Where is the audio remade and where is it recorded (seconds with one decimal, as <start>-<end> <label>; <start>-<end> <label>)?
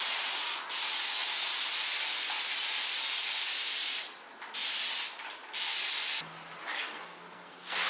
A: 0.0-6.7 recorded; 6.7-7.9 remade